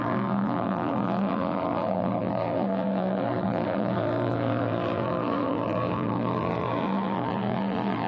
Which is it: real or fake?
fake